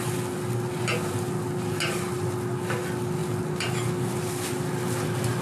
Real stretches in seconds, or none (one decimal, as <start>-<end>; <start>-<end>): 0.0-5.4